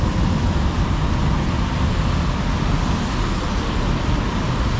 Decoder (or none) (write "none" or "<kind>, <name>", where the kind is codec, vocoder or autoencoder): none